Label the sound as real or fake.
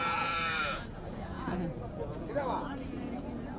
fake